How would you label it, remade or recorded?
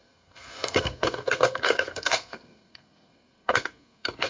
remade